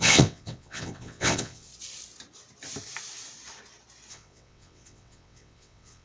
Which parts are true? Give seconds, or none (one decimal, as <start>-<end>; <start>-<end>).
1.7-4.1